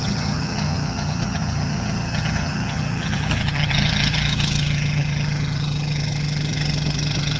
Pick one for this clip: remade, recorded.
remade